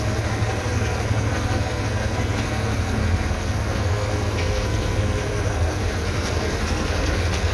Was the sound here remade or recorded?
remade